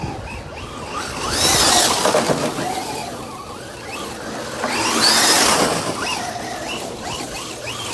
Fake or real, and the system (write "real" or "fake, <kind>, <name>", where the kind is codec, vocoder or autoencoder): real